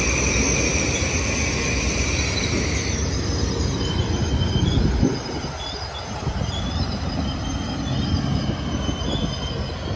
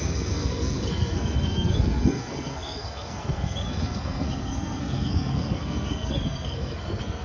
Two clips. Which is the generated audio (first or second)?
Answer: second